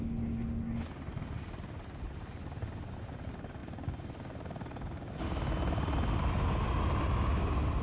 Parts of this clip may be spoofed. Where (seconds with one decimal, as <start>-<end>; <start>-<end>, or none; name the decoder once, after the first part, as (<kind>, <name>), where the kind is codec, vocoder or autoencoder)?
none